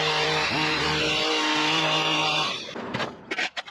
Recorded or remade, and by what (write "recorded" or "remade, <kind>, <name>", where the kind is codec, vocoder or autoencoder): recorded